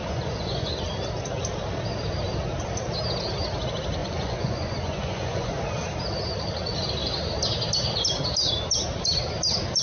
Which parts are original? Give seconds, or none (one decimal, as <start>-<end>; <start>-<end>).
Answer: 0.7-4.0; 5.6-9.8